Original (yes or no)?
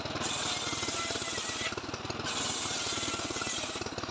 yes